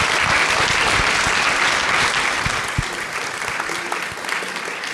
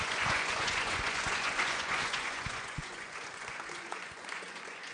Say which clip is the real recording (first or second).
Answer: first